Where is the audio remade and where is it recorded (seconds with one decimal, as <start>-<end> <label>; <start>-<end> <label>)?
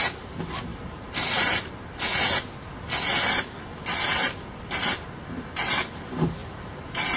0.0-0.7 recorded; 0.7-1.7 remade; 1.7-6.4 recorded; 6.4-7.2 remade